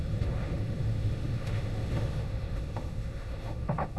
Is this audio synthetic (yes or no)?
yes